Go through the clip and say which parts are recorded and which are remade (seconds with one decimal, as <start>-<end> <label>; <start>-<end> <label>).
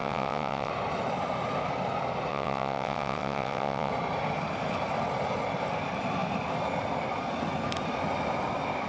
0.0-0.7 remade; 0.7-2.3 recorded; 2.3-3.9 remade; 3.9-8.9 recorded